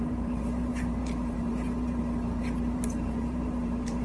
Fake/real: fake